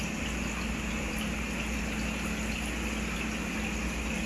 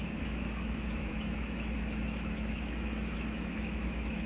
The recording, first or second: first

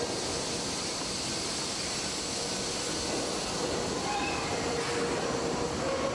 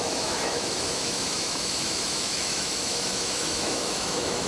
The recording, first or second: first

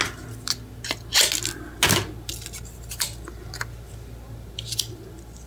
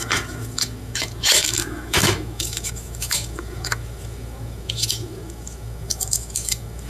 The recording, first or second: first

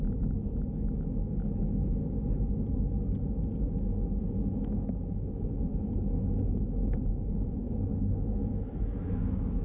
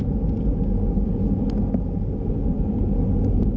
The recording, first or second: second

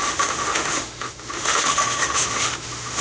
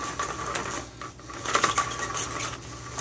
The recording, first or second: second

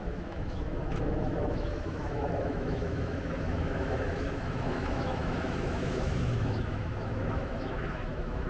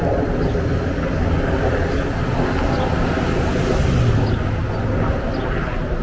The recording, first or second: second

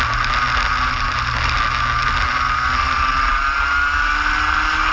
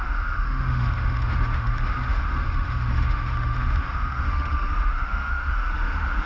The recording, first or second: first